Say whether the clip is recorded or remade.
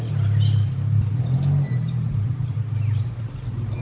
recorded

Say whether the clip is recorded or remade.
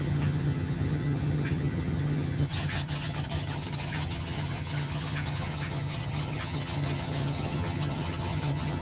remade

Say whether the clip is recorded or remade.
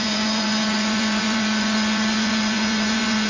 remade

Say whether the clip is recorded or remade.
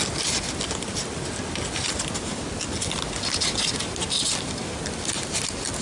recorded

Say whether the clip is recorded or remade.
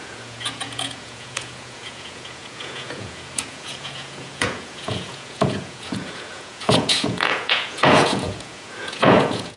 remade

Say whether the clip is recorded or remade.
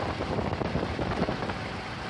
recorded